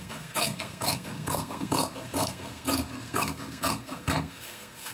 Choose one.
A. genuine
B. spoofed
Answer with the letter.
B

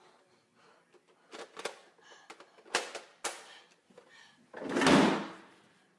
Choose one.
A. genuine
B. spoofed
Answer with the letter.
A